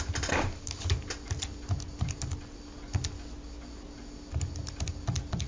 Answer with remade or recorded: recorded